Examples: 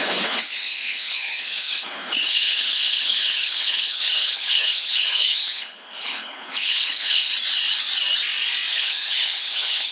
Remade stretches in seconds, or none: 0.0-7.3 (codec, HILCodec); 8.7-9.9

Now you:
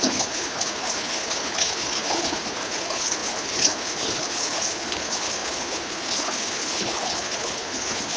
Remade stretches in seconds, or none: 0.0-8.2 (codec, HILCodec)